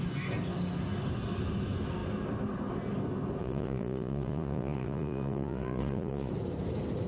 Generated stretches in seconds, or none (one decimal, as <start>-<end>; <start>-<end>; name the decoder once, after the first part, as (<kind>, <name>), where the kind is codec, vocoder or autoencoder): 3.4-6.3 (vocoder, Vocos)